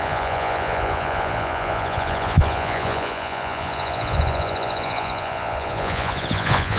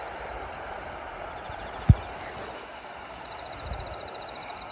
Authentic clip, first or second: second